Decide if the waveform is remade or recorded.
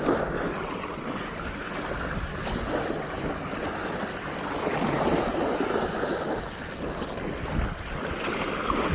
recorded